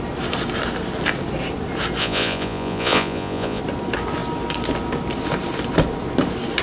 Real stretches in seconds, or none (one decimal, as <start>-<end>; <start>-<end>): 0.0-2.0; 3.6-6.6